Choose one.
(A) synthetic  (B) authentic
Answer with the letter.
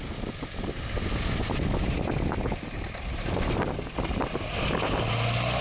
B